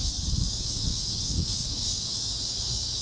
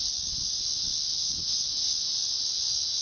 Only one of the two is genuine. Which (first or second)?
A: second